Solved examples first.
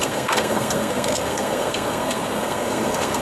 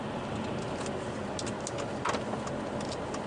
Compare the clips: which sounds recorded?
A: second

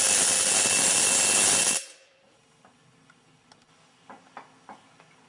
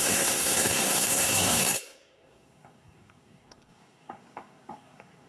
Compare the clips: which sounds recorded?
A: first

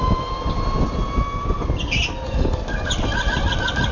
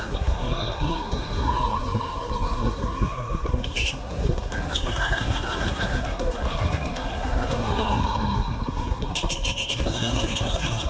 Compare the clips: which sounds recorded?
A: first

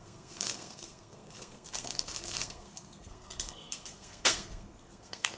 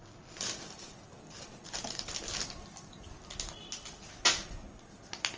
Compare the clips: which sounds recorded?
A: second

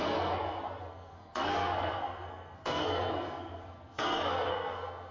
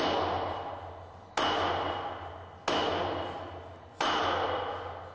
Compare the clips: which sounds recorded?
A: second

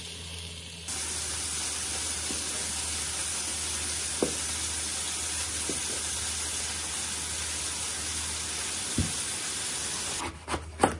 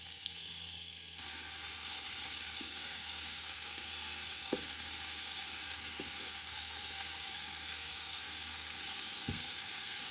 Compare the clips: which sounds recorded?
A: first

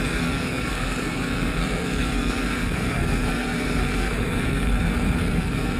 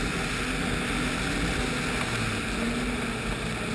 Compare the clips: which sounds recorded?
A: second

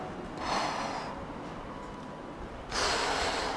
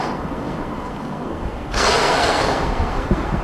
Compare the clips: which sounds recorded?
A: first